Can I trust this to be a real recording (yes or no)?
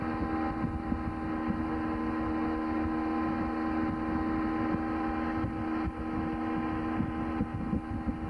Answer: yes